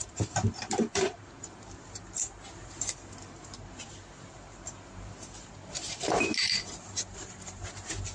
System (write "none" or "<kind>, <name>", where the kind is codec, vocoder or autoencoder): vocoder, BigVGAN v2